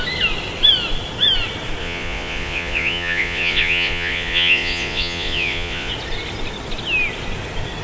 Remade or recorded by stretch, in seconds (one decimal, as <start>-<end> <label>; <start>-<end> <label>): 0.0-1.8 recorded; 1.8-5.9 remade; 5.9-7.8 recorded